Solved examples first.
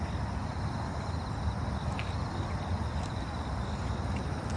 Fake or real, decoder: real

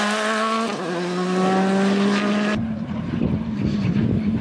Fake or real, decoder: real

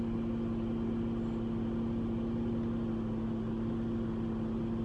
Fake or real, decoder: real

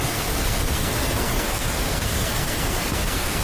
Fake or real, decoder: fake, codec, SNAC